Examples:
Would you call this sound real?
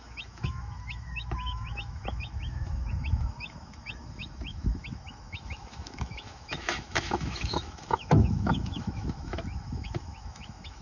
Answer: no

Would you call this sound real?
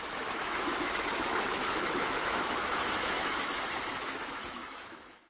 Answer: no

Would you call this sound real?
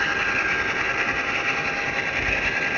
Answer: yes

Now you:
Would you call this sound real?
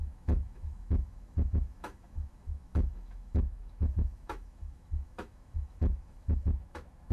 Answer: no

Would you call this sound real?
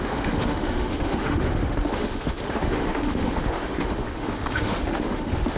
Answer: no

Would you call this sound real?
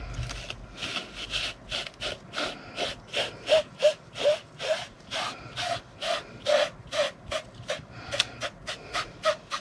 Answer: yes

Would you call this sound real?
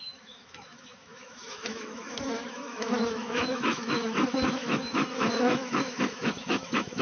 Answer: no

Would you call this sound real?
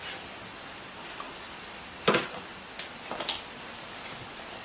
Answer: yes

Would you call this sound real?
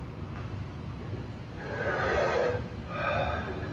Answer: yes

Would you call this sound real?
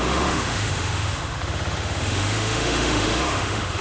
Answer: no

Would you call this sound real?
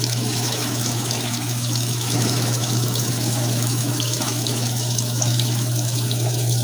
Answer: no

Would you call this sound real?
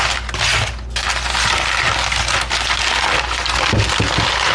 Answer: yes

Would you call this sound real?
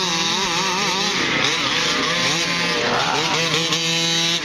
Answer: yes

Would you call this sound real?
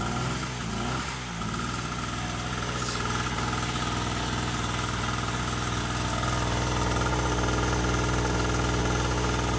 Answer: yes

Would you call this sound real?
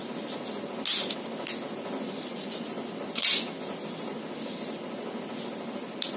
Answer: yes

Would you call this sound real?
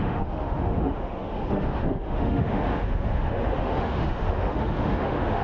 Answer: no